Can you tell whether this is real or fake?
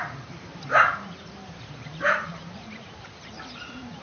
fake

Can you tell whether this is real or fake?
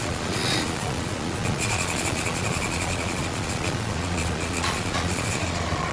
fake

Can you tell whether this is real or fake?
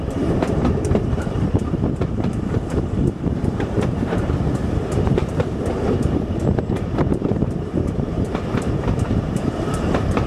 fake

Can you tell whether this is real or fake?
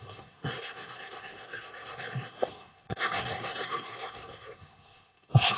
fake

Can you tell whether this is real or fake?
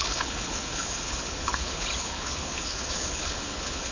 fake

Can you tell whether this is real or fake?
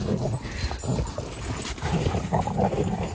real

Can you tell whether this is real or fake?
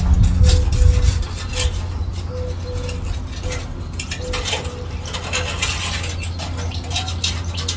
real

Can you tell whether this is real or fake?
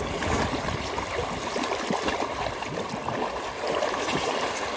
fake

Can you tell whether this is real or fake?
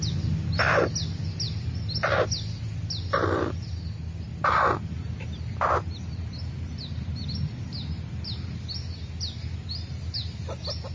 real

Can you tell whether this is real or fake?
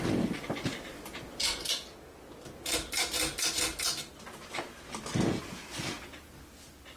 real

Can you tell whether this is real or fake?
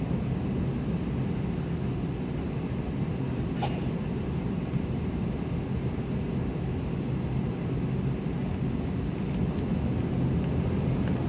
real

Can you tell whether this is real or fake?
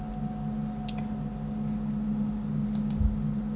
real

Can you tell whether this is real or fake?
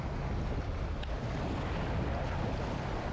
real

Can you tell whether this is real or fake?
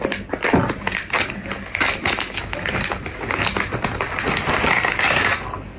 real